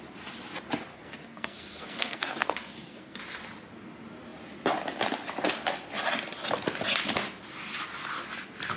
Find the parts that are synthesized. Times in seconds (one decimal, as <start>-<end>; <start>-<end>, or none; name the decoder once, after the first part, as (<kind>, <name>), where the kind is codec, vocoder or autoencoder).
0.9-3.2 (codec, SNAC)

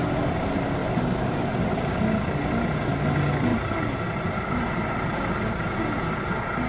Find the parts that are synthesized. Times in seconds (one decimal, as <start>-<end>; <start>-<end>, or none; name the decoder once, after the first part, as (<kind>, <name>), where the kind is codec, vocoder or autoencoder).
0.8-1.3 (vocoder, BigVGAN v2); 3.5-5.8

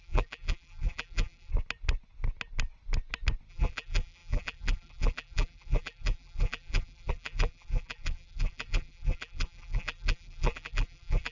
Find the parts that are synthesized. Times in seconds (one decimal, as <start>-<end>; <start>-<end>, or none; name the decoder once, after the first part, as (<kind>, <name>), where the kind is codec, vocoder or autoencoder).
0.0-1.5 (vocoder, BigVGAN v2); 3.5-11.3

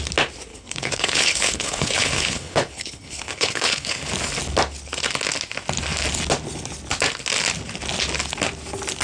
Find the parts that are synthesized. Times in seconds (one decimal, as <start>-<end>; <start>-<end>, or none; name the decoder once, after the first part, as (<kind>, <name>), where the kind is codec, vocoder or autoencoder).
0.5-4.1 (codec, HILCodec)

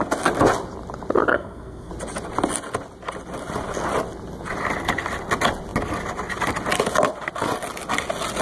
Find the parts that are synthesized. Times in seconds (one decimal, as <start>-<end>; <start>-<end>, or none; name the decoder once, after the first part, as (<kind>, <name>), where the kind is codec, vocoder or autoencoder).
1.3-1.9 (codec, SNAC)

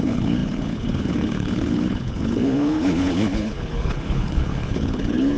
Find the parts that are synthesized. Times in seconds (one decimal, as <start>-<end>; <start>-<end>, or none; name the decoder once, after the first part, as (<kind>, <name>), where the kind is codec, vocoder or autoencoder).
0.0-5.4 (codec, HILCodec)

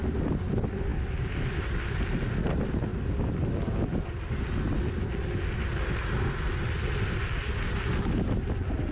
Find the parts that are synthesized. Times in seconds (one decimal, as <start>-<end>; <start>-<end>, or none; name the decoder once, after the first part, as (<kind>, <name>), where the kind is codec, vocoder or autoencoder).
none

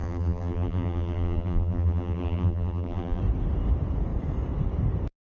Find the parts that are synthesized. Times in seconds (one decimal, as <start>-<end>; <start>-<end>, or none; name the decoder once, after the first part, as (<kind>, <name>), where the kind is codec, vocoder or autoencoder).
0.0-3.2 (vocoder, BigVGAN v2)